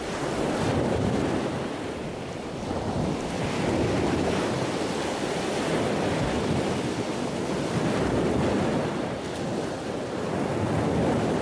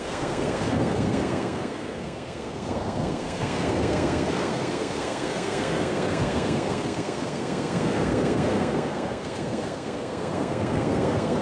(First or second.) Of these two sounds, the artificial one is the second